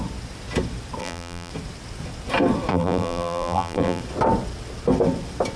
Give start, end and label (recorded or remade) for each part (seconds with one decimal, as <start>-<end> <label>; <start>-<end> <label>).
0.0-1.0 recorded; 1.0-1.5 remade; 1.5-2.7 recorded; 2.7-4.0 remade; 4.0-5.6 recorded